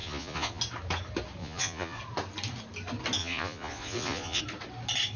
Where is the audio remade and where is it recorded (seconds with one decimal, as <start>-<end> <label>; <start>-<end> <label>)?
0.0-0.6 remade; 0.6-1.4 recorded; 1.4-2.0 remade; 2.0-3.2 recorded; 3.2-4.4 remade; 4.4-5.2 recorded